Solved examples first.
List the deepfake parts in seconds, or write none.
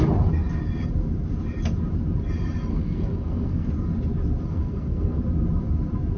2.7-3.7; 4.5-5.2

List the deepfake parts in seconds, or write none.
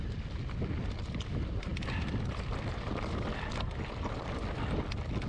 none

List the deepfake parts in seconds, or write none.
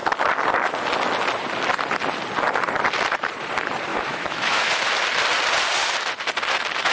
3.9-4.7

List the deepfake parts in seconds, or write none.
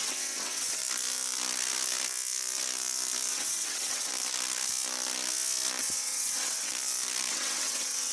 0.0-0.8; 3.3-4.1; 5.8-6.7; 7.3-8.1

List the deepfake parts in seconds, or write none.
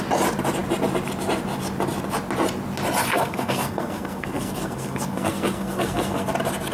3.1-6.3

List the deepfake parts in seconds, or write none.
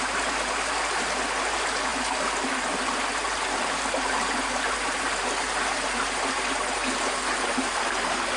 none